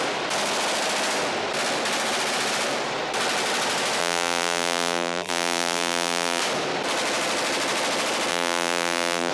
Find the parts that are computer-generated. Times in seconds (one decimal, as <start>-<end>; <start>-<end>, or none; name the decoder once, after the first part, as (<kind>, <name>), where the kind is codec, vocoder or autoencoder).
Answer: 4.0-6.4 (vocoder, BigVGAN v2); 8.3-9.3